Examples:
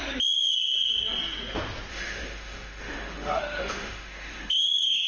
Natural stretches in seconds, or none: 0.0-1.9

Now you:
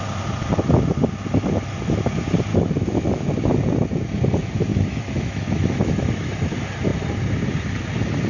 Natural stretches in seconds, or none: 0.0-2.5; 3.3-4.7; 6.3-8.3